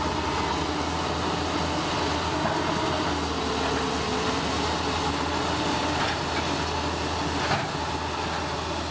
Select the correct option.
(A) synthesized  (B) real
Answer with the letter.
B